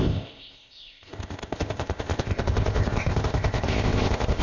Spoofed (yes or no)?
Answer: yes